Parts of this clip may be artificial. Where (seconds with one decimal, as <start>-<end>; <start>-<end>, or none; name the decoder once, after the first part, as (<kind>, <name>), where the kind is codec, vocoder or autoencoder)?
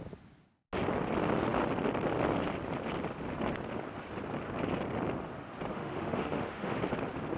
5.7-6.8 (autoencoder, DAC-VAE)